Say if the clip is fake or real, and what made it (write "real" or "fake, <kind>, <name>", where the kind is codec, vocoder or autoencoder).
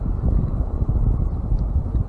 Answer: real